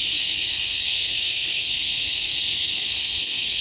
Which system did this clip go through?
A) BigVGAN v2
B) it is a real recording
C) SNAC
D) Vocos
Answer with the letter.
C